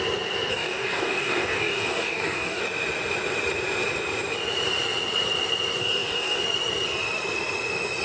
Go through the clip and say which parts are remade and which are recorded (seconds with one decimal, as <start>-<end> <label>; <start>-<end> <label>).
0.0-0.5 recorded; 0.5-2.6 remade; 2.6-5.8 recorded; 5.8-6.4 remade; 6.4-8.0 recorded